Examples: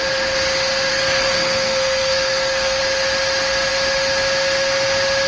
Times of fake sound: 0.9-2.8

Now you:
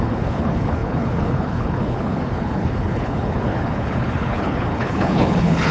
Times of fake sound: 0.0-5.7